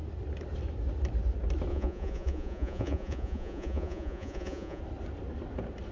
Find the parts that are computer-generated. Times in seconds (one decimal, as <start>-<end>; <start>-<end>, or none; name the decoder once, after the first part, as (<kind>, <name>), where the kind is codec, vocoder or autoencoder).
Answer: 1.7-4.8 (vocoder, Vocos)